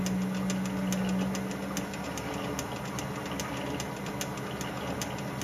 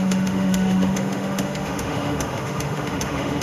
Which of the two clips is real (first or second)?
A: first